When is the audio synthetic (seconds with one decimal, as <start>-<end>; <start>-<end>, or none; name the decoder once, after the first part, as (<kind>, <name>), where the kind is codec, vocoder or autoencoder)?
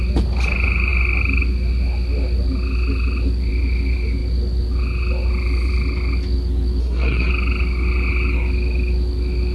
6.8-7.3 (codec, SNAC)